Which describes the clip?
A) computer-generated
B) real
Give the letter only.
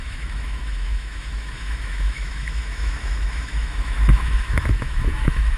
A